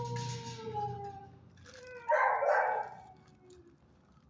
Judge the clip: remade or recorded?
recorded